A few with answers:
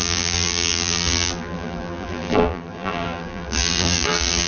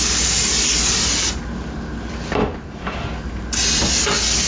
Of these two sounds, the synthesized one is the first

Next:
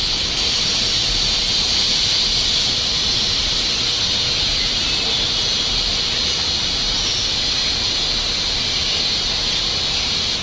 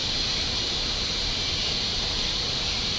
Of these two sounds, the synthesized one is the second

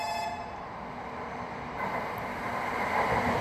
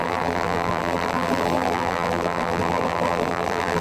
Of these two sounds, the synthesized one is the second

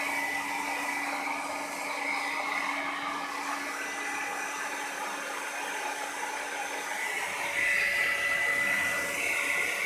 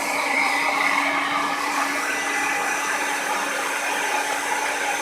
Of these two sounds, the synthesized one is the second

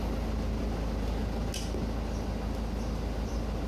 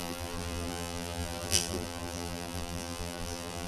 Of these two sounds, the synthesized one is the second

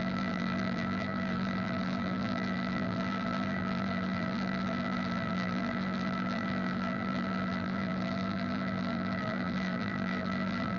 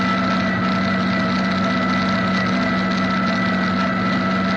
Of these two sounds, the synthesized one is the first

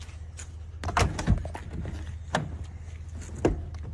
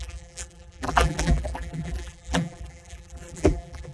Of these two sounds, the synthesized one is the second